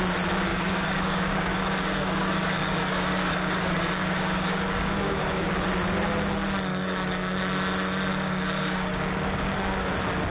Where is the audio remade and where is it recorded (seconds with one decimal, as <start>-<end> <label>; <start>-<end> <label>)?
0.0-0.5 recorded; 0.5-5.5 remade; 5.5-6.7 recorded; 6.7-7.4 remade; 7.4-8.1 recorded; 8.1-9.9 remade; 9.9-10.3 recorded